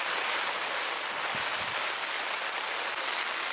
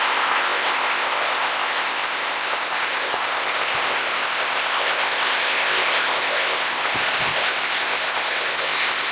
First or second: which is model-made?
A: second